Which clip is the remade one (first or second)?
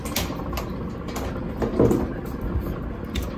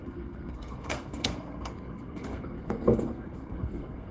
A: second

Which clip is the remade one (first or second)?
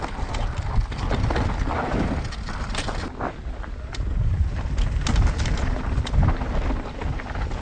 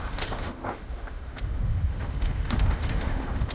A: second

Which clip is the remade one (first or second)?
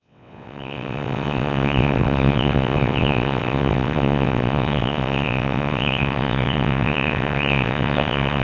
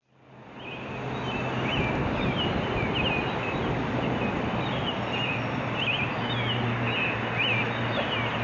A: first